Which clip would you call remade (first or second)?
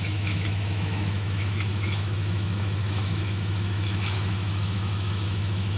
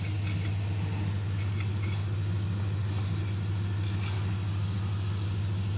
first